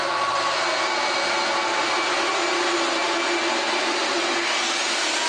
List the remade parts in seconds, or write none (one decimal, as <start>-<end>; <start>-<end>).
none